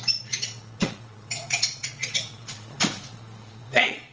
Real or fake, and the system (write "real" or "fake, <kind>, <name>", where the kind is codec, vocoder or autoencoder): fake, vocoder, Vocos